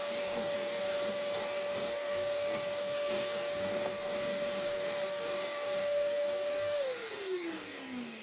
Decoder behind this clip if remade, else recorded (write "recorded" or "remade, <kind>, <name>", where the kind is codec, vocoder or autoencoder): remade, codec, DAC